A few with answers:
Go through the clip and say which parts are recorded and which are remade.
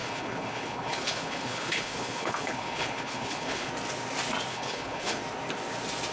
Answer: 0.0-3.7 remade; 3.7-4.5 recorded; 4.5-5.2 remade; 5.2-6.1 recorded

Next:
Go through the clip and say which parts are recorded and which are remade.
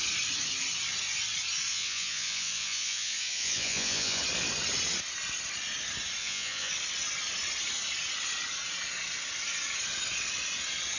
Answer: 0.0-1.7 recorded; 1.7-4.2 remade; 4.2-6.2 recorded; 6.2-6.7 remade; 6.7-11.0 recorded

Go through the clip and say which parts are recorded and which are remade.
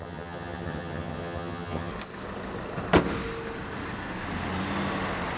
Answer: 0.0-1.9 remade; 1.9-5.4 recorded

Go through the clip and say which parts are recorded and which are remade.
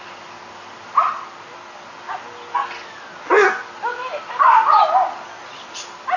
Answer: 0.0-6.2 recorded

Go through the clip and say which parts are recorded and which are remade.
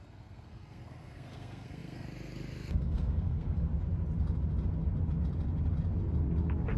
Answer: 0.0-3.7 remade; 3.7-6.8 recorded